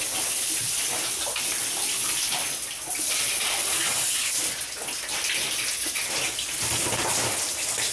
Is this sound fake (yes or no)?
no